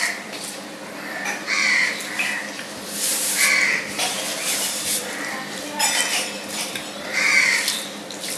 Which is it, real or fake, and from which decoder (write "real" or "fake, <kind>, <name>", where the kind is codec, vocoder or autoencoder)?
fake, vocoder, BigVGAN v2